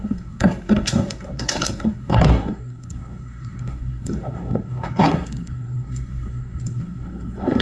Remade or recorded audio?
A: remade